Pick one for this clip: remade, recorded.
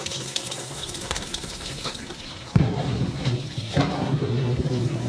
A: remade